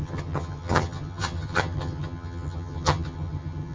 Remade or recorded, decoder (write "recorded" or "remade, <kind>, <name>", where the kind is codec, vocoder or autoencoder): remade, vocoder, HiFi-GAN